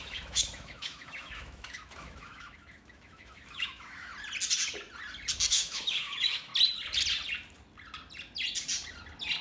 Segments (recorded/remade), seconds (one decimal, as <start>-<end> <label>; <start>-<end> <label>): 0.0-4.1 remade; 4.1-5.5 recorded; 5.5-6.5 remade; 6.5-9.4 recorded